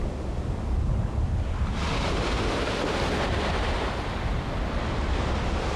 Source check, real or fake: real